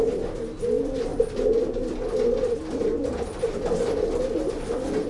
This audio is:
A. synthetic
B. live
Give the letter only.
B